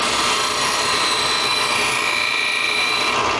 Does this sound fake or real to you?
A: real